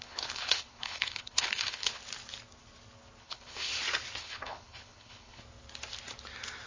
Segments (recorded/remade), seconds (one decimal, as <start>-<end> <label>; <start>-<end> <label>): 0.0-2.0 remade; 2.0-3.2 recorded; 3.2-3.7 remade; 3.7-4.2 recorded; 4.2-5.4 remade; 5.4-6.7 recorded